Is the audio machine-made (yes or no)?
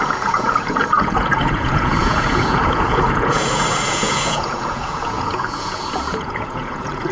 yes